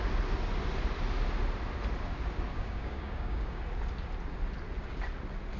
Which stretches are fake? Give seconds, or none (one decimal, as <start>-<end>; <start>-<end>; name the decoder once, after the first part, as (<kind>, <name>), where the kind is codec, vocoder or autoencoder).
2.5-3.6 (codec, DAC)

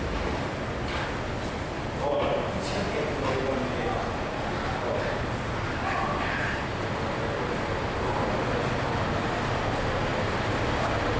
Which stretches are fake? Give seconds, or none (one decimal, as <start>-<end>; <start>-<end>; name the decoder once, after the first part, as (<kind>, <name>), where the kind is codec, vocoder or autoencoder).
none